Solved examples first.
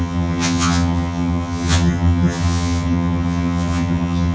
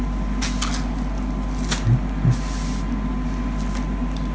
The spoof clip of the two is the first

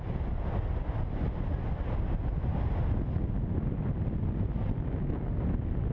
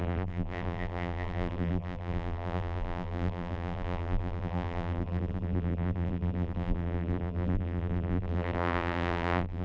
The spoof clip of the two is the second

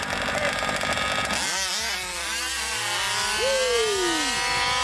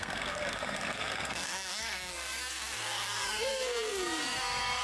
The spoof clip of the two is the second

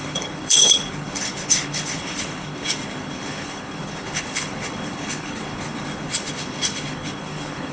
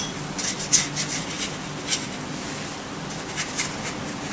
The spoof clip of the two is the first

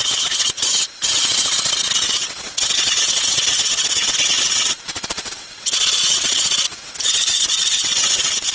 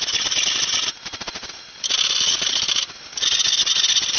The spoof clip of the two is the first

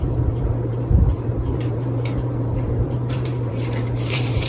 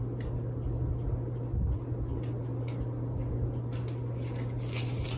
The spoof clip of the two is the first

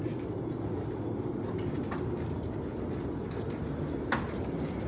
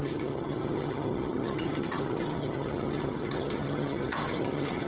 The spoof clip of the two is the second